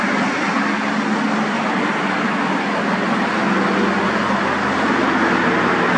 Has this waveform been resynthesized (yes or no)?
no